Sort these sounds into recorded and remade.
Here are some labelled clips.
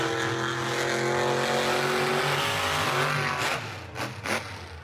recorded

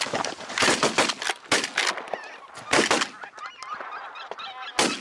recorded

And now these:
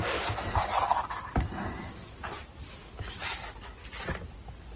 recorded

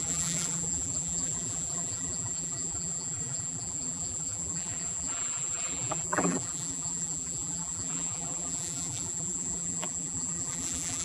remade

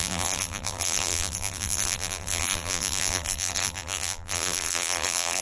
remade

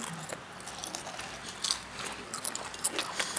recorded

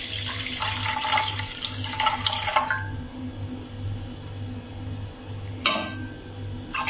recorded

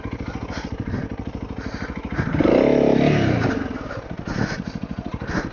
recorded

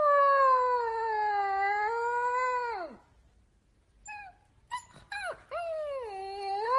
recorded